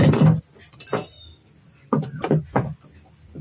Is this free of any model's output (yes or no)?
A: yes